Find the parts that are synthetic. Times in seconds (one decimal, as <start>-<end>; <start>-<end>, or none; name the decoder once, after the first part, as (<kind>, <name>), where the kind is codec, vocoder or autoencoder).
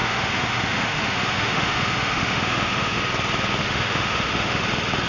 0.0-3.0 (autoencoder, DAC-VAE); 3.6-4.6